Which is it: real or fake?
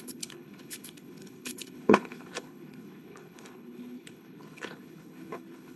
fake